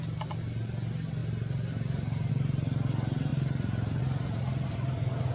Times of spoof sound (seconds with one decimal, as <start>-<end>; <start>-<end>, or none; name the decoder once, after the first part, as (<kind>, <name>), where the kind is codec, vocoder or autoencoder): none